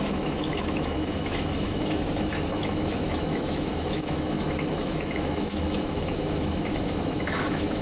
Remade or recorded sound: remade